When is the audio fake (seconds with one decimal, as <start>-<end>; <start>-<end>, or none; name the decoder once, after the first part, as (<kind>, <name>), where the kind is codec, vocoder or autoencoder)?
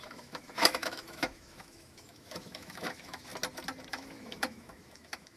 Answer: 0.0-3.3 (autoencoder, DAC-VAE); 3.9-5.4